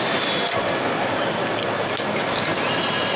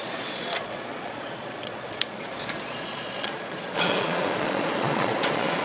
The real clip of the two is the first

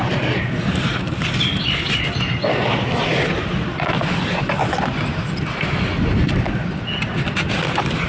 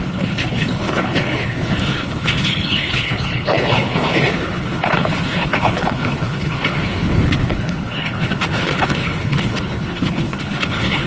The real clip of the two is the first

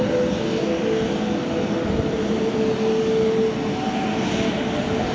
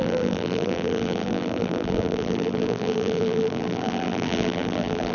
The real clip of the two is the first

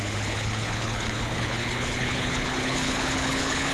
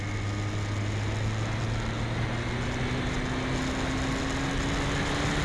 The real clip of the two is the second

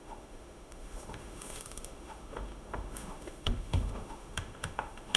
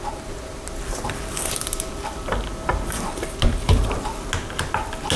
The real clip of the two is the second